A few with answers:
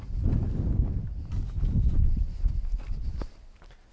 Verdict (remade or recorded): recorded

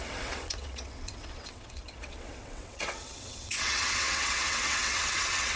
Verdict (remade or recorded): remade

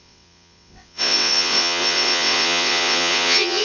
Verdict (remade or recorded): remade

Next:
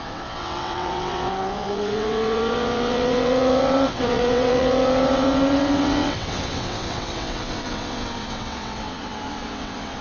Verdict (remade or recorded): remade